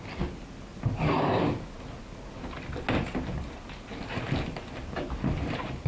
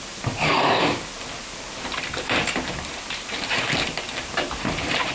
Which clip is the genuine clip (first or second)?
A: first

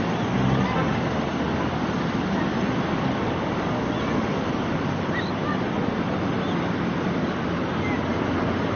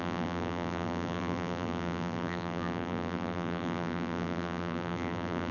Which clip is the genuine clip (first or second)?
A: first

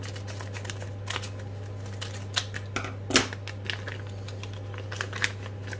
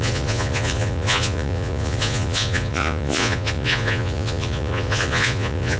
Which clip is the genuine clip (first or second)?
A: first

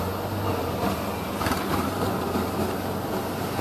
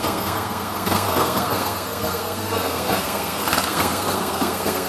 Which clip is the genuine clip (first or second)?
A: first